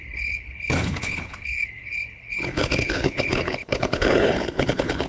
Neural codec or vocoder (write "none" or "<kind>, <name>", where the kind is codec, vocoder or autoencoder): codec, HILCodec